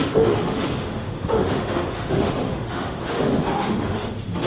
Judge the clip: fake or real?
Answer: fake